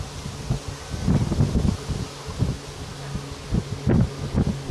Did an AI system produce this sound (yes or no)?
no